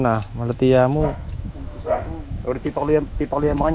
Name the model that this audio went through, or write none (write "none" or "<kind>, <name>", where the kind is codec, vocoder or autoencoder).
autoencoder, DAC-VAE